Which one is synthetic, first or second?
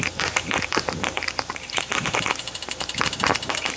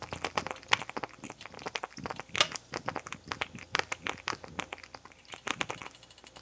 first